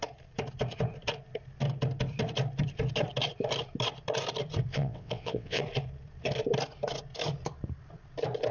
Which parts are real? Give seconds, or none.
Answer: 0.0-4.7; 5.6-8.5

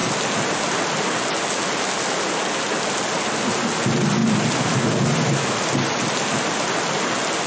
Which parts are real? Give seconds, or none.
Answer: 0.0-7.5

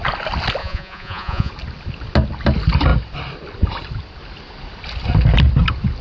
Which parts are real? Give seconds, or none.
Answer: 0.0-0.6; 1.5-6.0

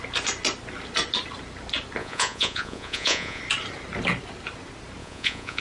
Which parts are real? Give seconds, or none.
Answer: 0.0-2.0; 3.4-5.0